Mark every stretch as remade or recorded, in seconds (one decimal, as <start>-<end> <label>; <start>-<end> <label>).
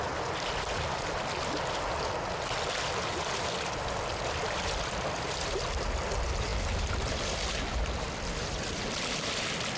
0.0-9.8 recorded